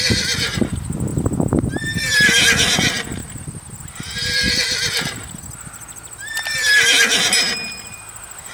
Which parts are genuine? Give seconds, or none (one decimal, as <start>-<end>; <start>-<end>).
0.0-8.5